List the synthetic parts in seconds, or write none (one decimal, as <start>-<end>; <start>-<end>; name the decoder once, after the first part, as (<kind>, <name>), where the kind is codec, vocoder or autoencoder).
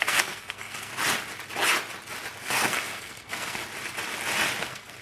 0.0-0.9 (codec, SNAC); 2.4-3.6; 4.6-5.0